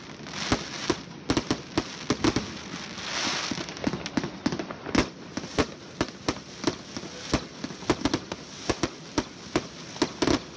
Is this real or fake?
real